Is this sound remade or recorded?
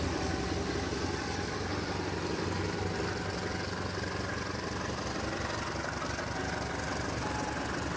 recorded